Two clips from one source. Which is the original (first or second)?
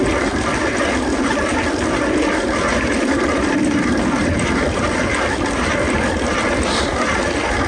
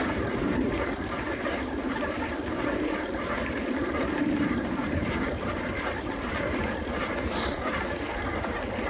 first